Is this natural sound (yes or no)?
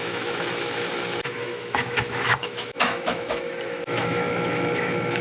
no